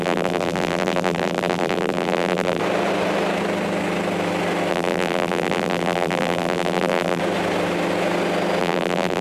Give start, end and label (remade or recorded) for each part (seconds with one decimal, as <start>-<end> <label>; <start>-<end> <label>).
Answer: 0.0-2.6 remade; 2.6-4.7 recorded; 4.7-7.2 remade; 7.2-8.6 recorded; 8.6-9.2 remade